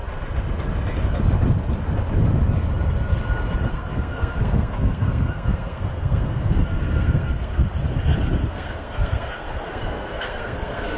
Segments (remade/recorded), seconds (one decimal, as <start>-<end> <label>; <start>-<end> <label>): 0.0-3.7 recorded; 3.7-7.6 remade; 7.6-8.3 recorded; 8.3-11.0 remade